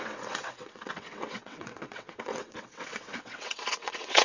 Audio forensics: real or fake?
fake